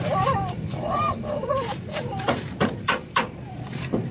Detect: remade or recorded remade